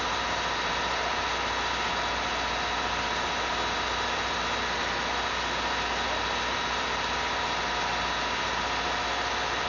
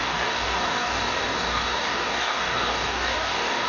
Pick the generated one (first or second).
second